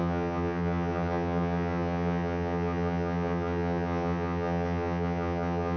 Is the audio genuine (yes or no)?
no